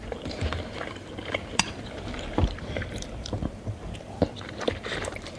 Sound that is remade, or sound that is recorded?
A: remade